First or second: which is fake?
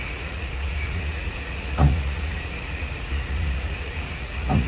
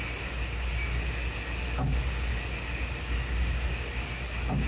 first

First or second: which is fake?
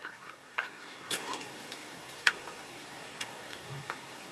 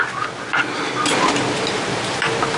first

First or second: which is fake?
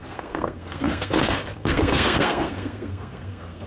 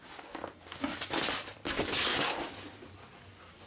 first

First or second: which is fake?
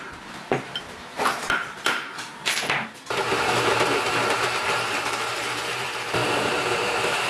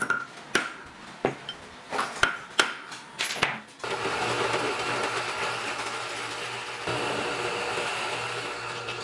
first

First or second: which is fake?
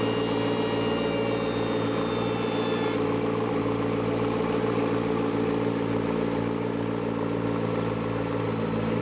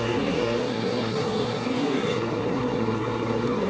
second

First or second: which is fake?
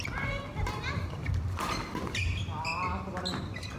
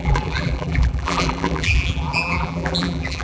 second